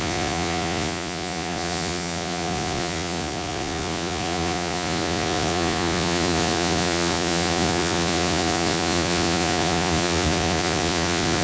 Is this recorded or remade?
remade